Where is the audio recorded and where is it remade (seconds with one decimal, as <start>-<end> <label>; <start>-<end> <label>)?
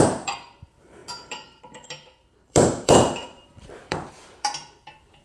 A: 0.0-5.2 remade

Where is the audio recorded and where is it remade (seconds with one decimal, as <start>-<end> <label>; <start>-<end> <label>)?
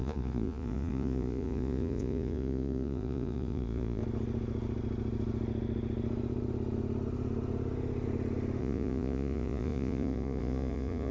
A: 0.0-4.0 remade; 4.0-8.6 recorded; 8.6-11.1 remade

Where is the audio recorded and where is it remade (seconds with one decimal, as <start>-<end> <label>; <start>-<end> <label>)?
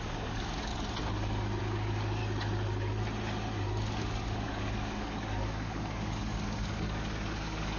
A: 0.0-0.7 remade; 0.7-1.6 recorded; 1.6-2.2 remade; 2.2-3.9 recorded; 3.9-7.8 remade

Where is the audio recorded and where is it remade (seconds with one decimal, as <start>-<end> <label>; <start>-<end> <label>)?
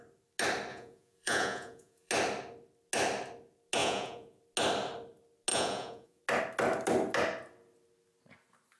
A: 0.0-0.7 recorded; 0.7-2.1 remade; 2.1-3.8 recorded; 3.8-4.4 remade; 4.4-5.5 recorded; 5.5-6.2 remade; 6.2-8.8 recorded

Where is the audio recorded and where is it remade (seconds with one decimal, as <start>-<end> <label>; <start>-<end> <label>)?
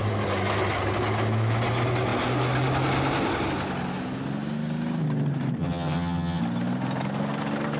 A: 0.0-5.6 recorded; 5.6-6.4 remade; 6.4-7.8 recorded